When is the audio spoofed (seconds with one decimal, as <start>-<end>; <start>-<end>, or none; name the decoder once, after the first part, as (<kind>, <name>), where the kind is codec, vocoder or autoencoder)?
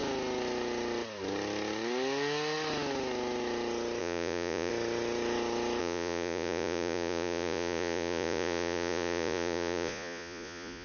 4.0-4.7 (vocoder, Vocos); 5.8-10.8